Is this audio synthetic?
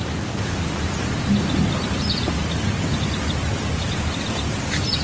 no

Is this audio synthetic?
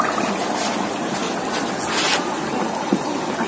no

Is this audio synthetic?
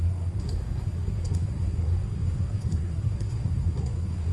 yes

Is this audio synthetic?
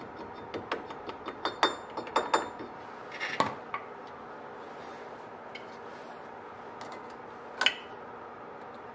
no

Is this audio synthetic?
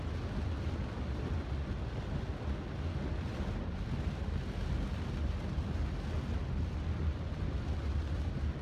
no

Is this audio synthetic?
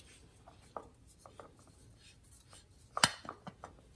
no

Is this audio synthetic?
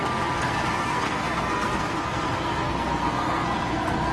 yes